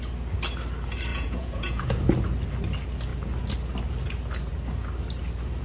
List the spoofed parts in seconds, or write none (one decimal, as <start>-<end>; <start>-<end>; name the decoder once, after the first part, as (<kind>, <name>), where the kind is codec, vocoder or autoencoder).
1.1-2.0 (vocoder, Vocos)